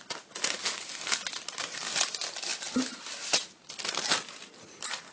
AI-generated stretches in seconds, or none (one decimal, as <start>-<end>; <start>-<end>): none